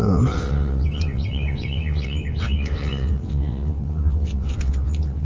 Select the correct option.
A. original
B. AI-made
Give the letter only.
B